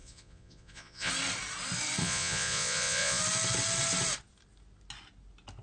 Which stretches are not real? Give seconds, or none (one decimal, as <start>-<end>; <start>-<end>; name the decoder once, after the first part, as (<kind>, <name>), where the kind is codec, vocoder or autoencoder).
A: 0.0-1.1 (vocoder, Vocos); 2.0-3.2